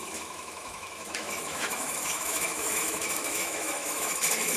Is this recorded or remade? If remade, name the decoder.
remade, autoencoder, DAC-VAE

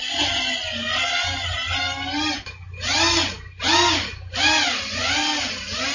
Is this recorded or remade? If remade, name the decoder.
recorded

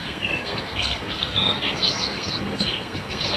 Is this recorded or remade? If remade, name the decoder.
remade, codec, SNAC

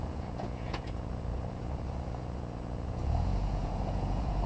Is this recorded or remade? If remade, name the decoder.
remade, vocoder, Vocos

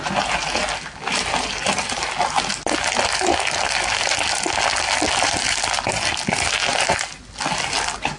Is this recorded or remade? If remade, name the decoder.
recorded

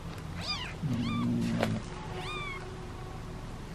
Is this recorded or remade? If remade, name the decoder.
recorded